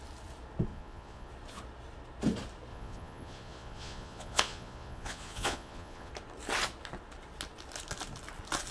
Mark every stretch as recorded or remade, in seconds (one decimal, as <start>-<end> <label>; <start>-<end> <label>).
0.0-0.7 recorded; 0.7-1.3 remade; 1.3-2.7 recorded; 2.7-6.1 remade; 6.1-8.7 recorded